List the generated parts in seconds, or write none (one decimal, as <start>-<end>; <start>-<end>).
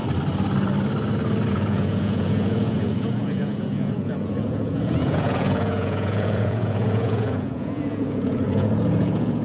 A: 1.5-9.4